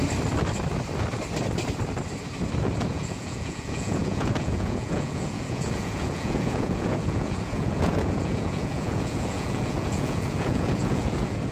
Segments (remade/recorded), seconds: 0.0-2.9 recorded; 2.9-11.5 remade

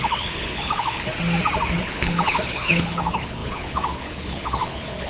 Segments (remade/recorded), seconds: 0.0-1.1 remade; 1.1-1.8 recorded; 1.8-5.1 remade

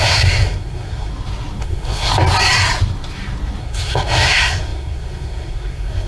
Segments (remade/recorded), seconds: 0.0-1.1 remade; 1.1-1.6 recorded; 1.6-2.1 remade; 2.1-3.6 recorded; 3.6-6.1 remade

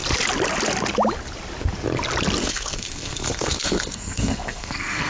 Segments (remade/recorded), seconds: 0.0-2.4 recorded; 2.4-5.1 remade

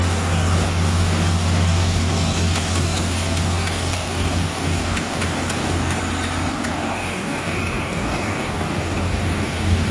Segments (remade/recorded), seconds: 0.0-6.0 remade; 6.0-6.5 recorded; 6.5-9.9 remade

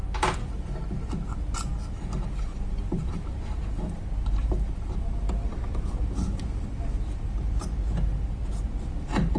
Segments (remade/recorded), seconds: 0.0-2.5 recorded; 2.5-7.3 remade; 7.3-9.4 recorded